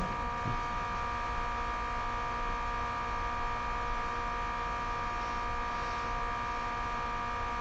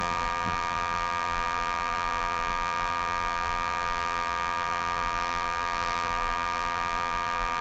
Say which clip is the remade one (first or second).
second